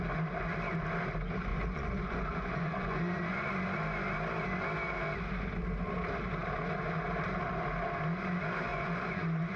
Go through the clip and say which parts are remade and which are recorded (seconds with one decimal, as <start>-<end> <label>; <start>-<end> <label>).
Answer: 0.0-1.5 recorded; 1.5-3.5 remade; 3.5-8.7 recorded; 8.7-9.6 remade